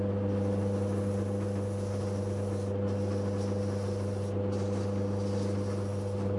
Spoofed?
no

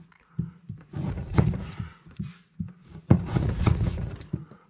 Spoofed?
yes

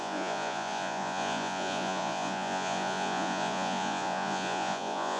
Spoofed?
yes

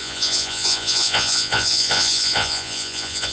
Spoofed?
yes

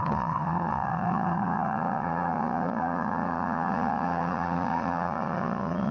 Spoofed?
yes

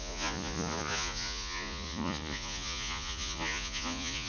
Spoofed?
yes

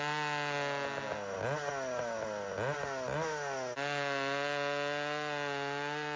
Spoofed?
no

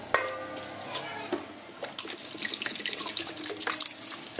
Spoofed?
no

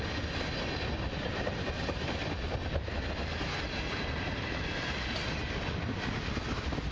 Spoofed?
no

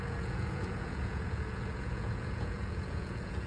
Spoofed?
yes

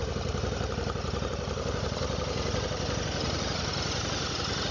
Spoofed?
no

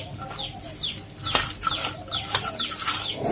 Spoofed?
no